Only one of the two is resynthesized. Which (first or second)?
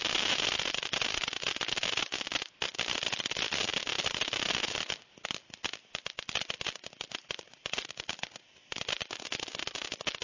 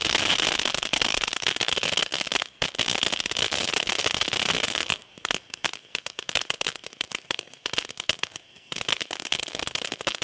second